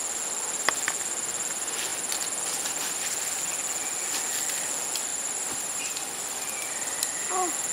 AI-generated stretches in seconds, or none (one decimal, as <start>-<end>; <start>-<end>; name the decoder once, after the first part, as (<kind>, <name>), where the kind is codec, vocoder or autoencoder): 5.1-5.8 (vocoder, BigVGAN v2)